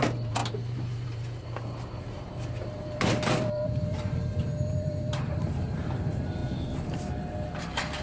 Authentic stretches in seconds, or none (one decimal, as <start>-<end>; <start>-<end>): 6.4-7.6